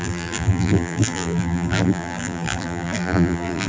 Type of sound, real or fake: fake